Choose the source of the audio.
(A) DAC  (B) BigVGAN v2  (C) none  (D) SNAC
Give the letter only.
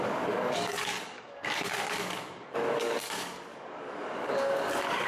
A